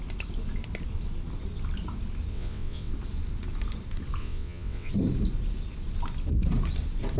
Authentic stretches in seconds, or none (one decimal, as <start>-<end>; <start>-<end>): 0.0-2.3; 2.9-4.2; 4.9-7.2